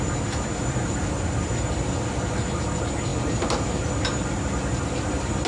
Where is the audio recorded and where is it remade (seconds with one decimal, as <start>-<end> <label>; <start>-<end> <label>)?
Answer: 0.0-5.5 recorded